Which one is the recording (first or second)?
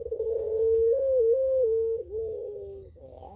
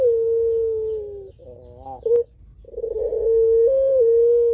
second